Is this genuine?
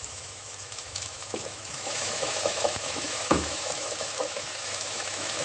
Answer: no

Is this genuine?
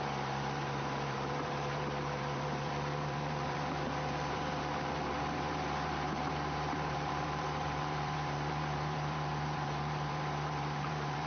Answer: no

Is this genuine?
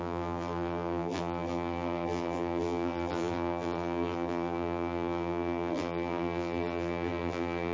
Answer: no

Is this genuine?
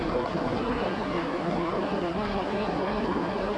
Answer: no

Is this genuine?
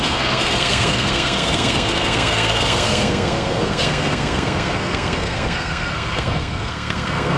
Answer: no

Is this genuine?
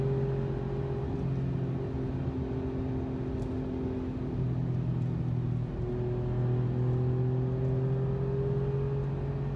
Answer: yes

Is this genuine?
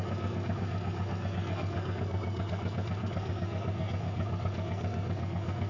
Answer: no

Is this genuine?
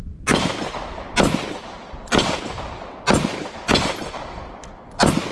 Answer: yes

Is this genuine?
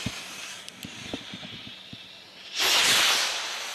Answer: no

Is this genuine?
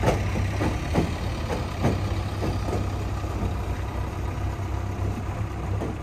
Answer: yes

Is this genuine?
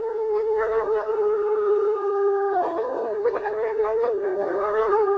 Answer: no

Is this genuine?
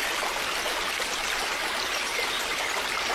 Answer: yes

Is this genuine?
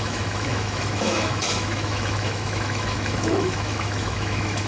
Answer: no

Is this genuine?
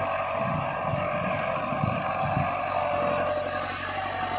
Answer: yes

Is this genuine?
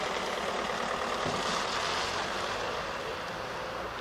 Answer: yes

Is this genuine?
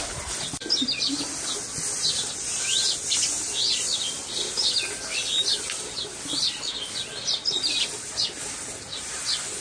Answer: yes